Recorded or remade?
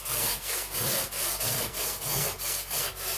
remade